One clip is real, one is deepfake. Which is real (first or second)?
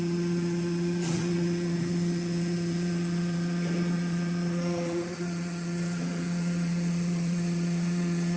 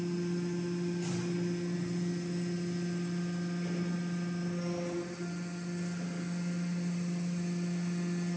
second